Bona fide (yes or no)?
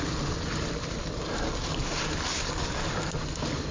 yes